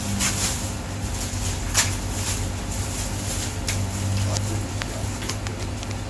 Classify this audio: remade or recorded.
recorded